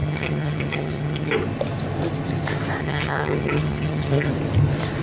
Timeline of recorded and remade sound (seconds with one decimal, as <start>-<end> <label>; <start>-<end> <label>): 0.0-1.3 remade; 1.3-2.8 recorded; 2.8-4.3 remade; 4.3-5.0 recorded